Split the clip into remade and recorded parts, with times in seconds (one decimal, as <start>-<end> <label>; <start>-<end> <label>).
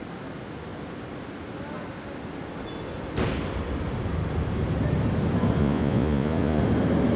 0.0-5.6 recorded; 5.6-6.6 remade; 6.6-7.2 recorded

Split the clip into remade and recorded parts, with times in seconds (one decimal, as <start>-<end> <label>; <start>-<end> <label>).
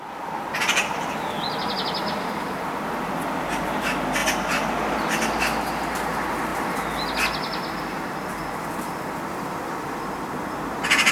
0.0-11.1 recorded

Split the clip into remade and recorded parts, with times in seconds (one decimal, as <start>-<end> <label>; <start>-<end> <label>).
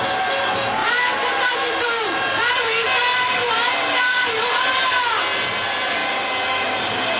0.0-0.8 recorded; 0.8-1.5 remade; 1.5-3.4 recorded; 3.4-4.4 remade; 4.4-7.2 recorded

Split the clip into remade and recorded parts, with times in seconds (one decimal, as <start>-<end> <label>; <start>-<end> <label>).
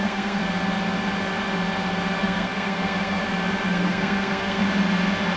0.0-0.4 remade; 0.4-2.2 recorded; 2.2-3.2 remade; 3.2-3.7 recorded; 3.7-4.6 remade; 4.6-5.4 recorded